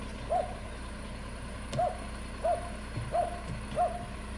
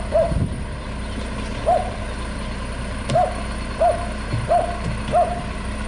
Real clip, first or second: first